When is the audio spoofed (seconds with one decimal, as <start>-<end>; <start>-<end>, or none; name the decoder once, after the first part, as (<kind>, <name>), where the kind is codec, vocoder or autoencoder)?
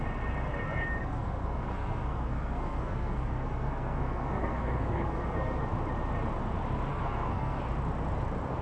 1.0-5.6 (codec, SNAC); 6.9-7.6